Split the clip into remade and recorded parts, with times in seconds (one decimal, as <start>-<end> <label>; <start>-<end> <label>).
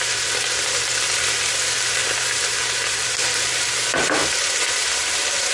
0.0-5.5 recorded